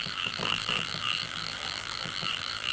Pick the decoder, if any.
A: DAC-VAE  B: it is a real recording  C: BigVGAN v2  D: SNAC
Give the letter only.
C